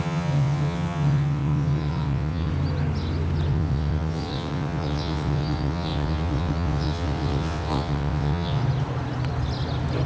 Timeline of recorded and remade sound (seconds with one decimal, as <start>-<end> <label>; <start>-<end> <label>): 0.0-2.5 remade; 2.5-3.5 recorded; 3.5-8.6 remade; 8.6-10.1 recorded